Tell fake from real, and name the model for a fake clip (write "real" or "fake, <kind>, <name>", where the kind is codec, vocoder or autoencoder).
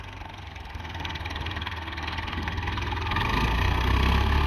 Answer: fake, codec, SNAC